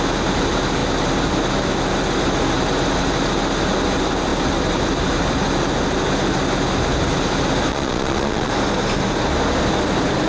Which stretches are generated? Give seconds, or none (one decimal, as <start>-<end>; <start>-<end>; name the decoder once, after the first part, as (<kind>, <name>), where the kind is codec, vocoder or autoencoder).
7.7-8.5 (vocoder, Vocos)